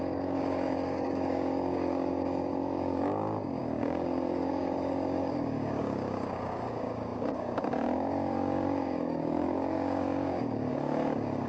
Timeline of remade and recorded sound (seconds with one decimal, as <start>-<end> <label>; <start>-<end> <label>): 0.0-11.5 remade